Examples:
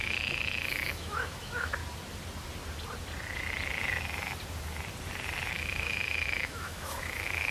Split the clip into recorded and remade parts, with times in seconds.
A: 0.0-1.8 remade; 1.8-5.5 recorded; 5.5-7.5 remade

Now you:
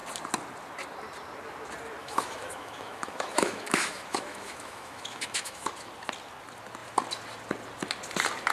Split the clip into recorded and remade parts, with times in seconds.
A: 0.0-2.0 recorded; 2.0-5.7 remade; 5.7-8.5 recorded

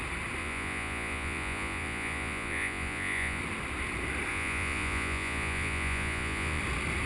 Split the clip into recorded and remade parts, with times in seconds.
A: 0.0-0.4 recorded; 0.4-3.4 remade; 3.4-4.3 recorded; 4.3-6.6 remade; 6.6-7.1 recorded

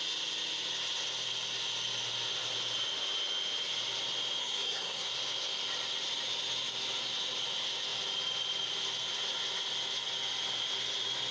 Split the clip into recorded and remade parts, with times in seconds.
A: 0.0-4.4 recorded; 4.4-5.2 remade; 5.2-11.3 recorded

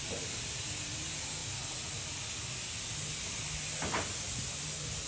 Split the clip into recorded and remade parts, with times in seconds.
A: 0.0-5.1 recorded

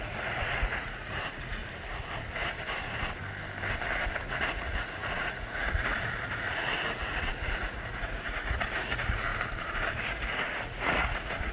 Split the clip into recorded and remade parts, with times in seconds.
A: 0.0-1.6 remade; 1.6-4.2 recorded; 4.2-9.3 remade; 9.3-10.0 recorded; 10.0-11.5 remade